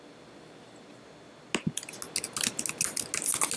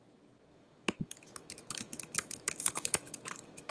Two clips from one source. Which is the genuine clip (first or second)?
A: first